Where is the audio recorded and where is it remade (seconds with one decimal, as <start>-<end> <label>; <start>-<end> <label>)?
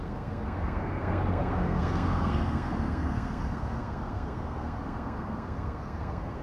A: 0.0-6.4 remade